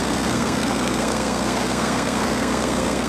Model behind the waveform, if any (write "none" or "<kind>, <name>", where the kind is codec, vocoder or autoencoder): codec, SNAC